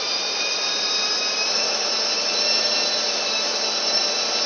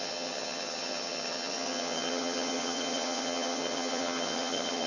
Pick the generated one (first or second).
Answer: second